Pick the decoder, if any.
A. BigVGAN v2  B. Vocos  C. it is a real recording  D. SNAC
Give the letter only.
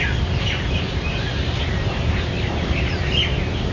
A